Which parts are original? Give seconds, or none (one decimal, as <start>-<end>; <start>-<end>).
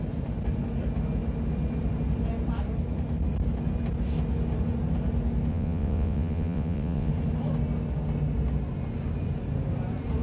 0.0-5.5; 7.1-10.2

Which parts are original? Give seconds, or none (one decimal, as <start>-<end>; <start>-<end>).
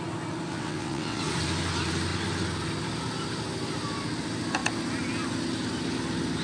0.0-0.5; 1.2-6.4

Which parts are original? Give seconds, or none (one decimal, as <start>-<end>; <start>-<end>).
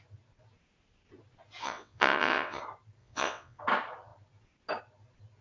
0.0-1.6; 2.6-3.0; 3.6-5.4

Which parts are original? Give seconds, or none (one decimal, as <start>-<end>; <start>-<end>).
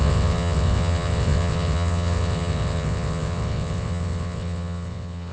none